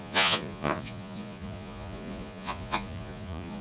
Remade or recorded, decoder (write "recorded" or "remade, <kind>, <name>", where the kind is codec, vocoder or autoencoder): remade, vocoder, Vocos